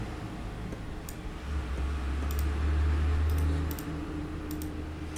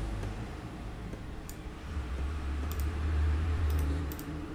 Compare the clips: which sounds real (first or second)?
first